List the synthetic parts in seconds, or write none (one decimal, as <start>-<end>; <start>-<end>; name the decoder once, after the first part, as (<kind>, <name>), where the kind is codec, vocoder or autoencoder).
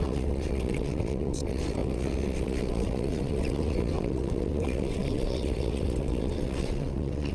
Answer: 0.0-7.3 (vocoder, WaveNeXt)